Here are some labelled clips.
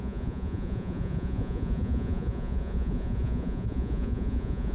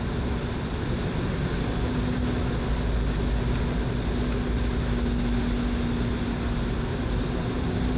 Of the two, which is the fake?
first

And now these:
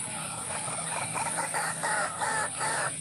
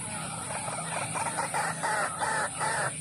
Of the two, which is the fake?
first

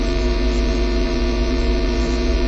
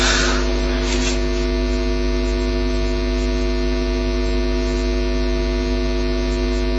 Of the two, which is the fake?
first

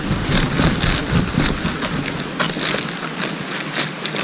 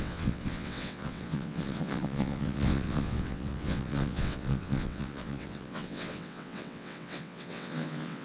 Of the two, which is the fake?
second